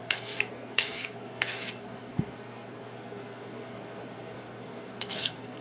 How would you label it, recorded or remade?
remade